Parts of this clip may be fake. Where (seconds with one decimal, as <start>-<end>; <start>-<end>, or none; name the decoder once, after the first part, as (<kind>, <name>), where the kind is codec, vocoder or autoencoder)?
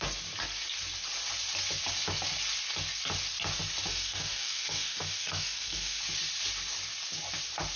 3.9-6.0 (codec, DAC)